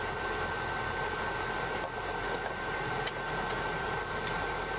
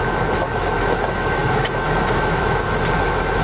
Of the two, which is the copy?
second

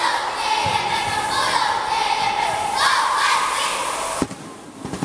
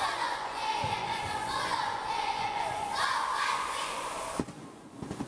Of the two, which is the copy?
second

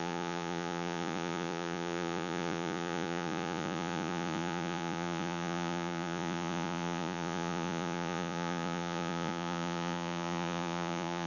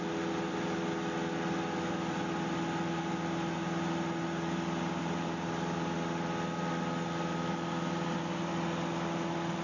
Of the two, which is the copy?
first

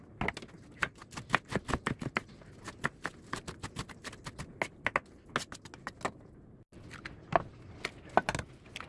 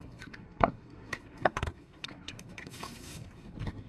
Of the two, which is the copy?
second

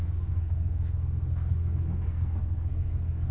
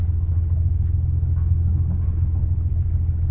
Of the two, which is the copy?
first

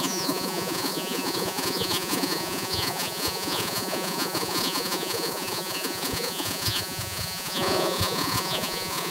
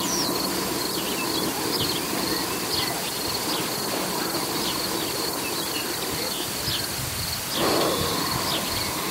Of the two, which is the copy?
first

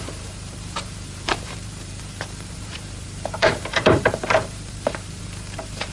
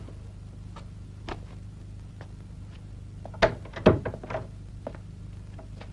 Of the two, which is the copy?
first